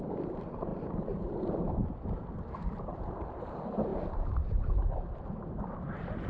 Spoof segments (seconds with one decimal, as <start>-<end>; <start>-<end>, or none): 0.0-0.7; 2.5-6.3

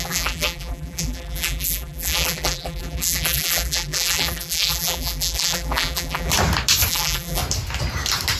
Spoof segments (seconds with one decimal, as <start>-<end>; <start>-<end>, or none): 0.0-6.3; 6.9-7.4

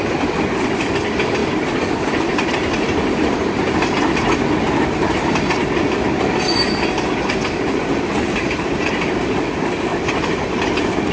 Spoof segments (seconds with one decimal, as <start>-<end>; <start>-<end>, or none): none

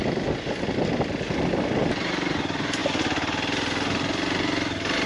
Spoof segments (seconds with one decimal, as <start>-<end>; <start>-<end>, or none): none

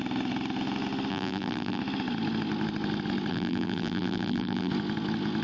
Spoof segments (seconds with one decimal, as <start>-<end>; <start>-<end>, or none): 1.1-1.8; 3.3-4.7

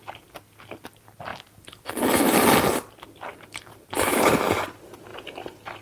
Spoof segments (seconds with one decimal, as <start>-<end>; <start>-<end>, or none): 3.3-4.3

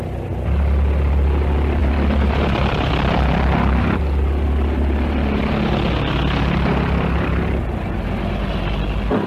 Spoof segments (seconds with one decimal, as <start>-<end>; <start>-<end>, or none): 1.8-2.9